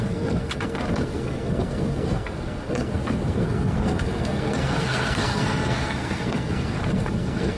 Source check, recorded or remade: remade